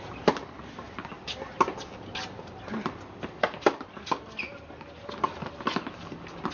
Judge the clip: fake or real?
real